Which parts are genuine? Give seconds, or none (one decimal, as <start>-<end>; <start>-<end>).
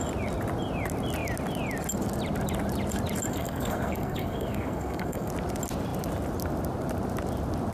0.0-3.3; 5.3-7.7